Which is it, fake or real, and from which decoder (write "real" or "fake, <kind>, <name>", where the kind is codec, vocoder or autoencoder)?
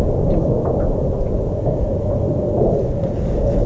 real